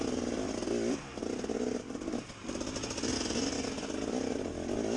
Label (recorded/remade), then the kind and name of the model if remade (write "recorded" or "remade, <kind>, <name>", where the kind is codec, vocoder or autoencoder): recorded